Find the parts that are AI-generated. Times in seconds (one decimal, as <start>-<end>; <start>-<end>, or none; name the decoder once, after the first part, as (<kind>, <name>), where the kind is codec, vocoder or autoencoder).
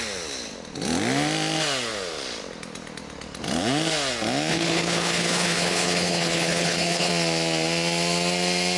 4.5-7.1 (codec, HILCodec)